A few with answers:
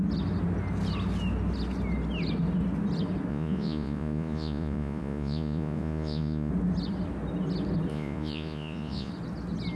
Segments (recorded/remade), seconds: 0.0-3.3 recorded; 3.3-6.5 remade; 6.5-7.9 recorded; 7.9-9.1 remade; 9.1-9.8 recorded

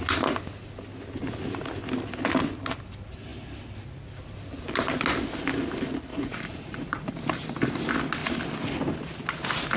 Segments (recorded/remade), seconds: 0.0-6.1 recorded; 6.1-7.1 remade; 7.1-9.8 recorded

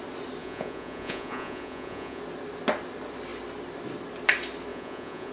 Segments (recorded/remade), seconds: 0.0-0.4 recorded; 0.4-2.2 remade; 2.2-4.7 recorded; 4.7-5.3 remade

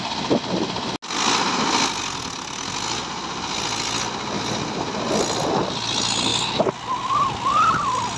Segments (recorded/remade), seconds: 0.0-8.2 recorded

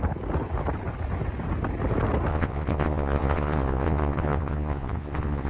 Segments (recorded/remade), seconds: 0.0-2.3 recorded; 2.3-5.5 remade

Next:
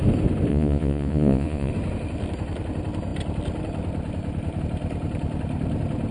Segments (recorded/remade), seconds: 0.0-0.5 recorded; 0.5-1.7 remade; 1.7-6.1 recorded